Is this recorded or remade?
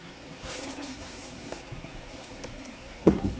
remade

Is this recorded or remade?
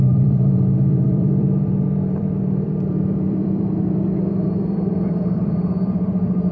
remade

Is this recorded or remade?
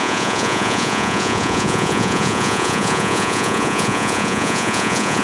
remade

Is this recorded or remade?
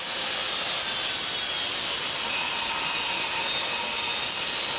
recorded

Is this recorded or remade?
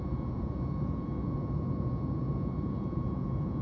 remade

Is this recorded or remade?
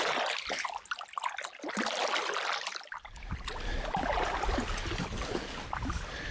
recorded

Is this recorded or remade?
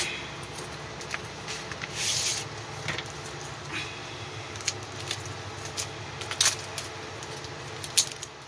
recorded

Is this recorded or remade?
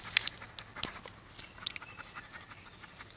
recorded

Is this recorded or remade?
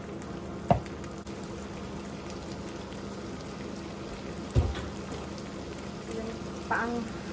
recorded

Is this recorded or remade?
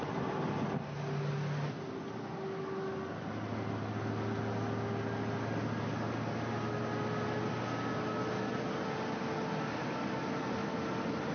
recorded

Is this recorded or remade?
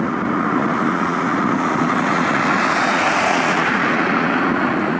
remade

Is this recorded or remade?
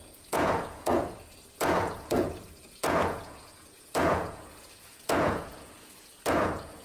remade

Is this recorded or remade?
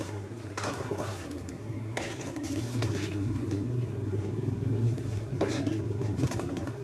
remade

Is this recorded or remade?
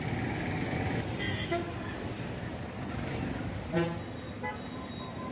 recorded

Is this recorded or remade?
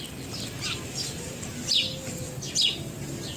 recorded